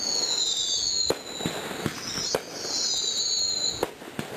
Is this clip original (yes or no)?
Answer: yes